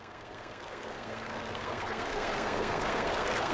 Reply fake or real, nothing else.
fake